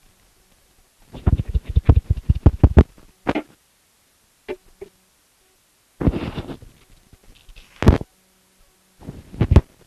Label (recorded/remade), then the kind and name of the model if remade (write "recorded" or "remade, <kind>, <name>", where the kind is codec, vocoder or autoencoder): recorded